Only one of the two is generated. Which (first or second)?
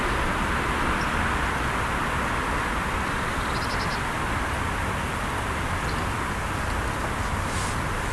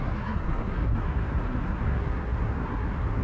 second